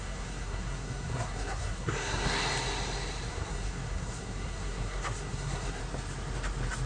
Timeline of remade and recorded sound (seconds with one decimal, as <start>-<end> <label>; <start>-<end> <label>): 0.0-2.4 remade; 2.4-3.3 recorded; 3.3-5.8 remade; 5.8-6.9 recorded